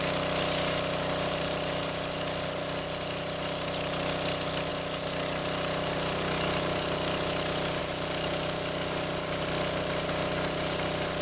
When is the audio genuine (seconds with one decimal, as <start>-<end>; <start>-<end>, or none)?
0.0-11.2